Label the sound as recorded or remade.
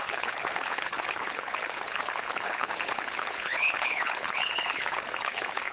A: remade